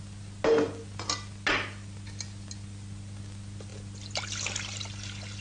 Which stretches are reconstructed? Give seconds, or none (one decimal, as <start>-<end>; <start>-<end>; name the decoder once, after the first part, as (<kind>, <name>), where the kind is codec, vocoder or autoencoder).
none

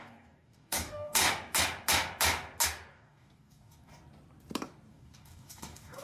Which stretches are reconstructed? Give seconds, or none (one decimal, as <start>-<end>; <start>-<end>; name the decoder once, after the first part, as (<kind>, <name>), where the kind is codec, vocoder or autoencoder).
0.0-1.2 (codec, DAC); 2.9-3.9; 4.9-6.0

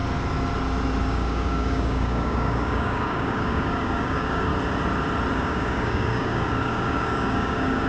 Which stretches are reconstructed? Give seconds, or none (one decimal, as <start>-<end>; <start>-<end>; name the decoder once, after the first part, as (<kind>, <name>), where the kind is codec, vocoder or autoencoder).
1.0-4.5 (codec, DAC); 5.3-7.9